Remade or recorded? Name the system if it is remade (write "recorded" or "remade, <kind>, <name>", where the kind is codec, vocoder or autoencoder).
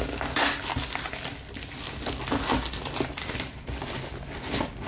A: recorded